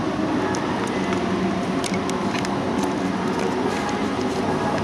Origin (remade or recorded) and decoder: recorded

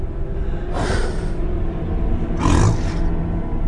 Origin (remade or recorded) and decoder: recorded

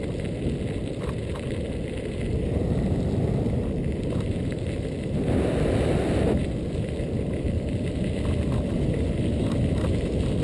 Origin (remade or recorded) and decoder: recorded